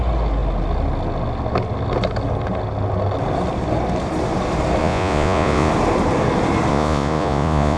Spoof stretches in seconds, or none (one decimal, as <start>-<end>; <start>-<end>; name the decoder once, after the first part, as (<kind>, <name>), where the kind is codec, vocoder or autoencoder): 4.8-5.7 (vocoder, Vocos); 6.7-7.8